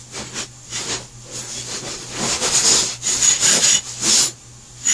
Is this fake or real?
real